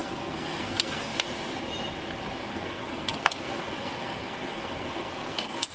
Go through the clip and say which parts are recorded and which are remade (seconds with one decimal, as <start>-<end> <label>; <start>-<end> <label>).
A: 0.0-1.1 remade; 1.1-2.5 recorded; 2.5-5.7 remade